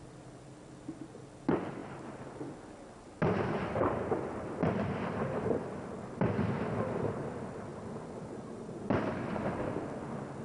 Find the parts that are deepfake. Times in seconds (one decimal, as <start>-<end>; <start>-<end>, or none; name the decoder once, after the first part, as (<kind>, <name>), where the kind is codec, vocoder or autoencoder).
none